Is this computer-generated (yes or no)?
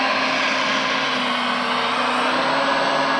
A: no